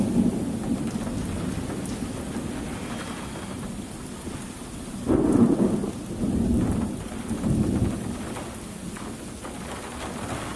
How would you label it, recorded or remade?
recorded